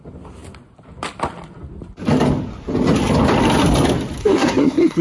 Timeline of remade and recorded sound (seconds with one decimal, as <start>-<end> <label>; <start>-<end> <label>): 0.0-4.2 recorded; 4.2-5.0 remade